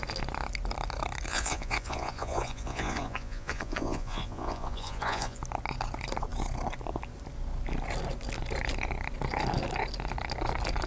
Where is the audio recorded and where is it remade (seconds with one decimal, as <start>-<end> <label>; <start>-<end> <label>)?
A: 0.0-1.3 recorded; 1.3-5.4 remade; 5.4-10.9 recorded